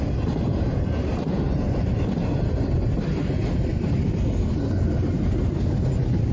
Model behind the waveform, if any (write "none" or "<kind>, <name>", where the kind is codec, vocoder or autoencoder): none